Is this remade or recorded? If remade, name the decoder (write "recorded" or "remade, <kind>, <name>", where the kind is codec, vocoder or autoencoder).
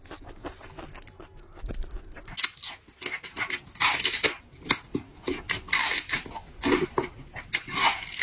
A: recorded